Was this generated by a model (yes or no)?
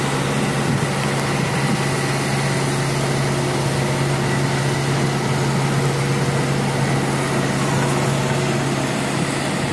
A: no